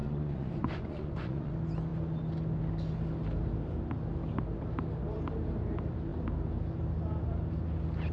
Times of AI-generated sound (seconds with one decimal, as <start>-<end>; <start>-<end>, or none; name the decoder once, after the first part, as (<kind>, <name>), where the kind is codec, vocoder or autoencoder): 0.0-1.5 (vocoder, Vocos)